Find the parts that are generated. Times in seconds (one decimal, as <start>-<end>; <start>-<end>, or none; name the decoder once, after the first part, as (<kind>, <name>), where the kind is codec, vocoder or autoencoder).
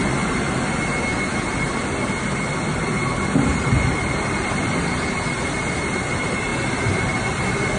none